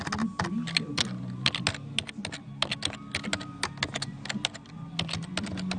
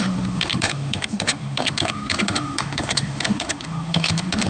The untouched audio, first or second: first